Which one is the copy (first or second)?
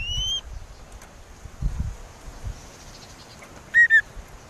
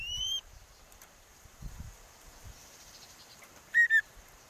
second